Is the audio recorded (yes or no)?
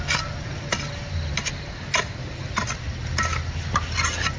yes